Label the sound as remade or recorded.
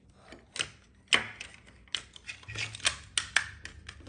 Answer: recorded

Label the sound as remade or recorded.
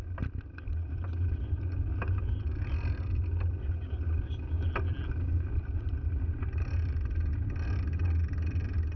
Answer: recorded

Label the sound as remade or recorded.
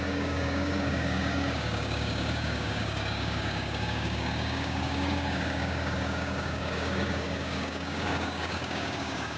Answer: remade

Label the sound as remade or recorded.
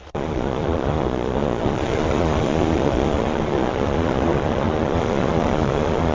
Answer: remade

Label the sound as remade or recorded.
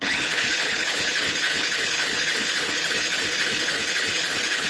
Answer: remade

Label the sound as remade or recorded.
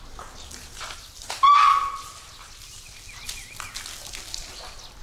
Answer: recorded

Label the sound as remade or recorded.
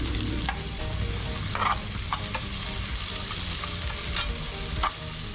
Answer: recorded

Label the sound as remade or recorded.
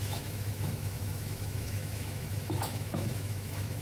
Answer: remade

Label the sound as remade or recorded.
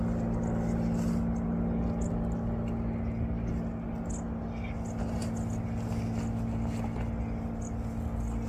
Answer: recorded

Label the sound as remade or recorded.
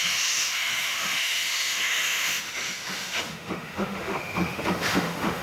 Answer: remade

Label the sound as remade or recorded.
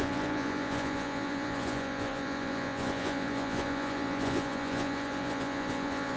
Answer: remade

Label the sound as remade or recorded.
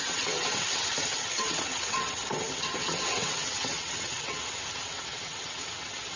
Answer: remade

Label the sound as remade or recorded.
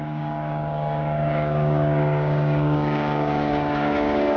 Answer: remade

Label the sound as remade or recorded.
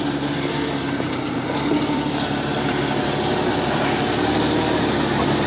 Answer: recorded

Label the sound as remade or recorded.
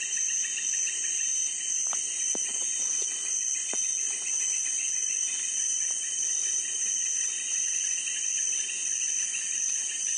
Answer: recorded